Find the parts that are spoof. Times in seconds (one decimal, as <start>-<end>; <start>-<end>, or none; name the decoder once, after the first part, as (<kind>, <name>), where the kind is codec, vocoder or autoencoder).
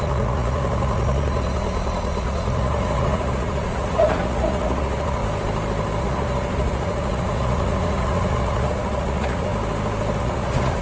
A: 0.0-5.2 (vocoder, Vocos); 6.0-9.5; 10.2-10.8